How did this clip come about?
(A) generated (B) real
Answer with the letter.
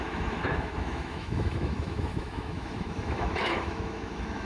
A